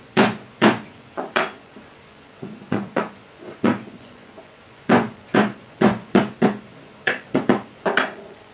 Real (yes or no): no